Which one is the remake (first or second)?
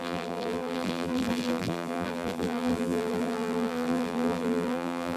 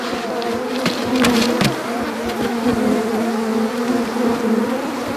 first